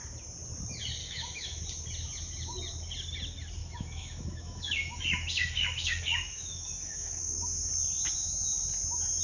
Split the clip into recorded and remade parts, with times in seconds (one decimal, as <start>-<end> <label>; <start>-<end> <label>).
0.0-1.0 recorded; 1.0-1.6 remade; 1.6-3.6 recorded; 3.6-7.7 remade; 7.7-9.2 recorded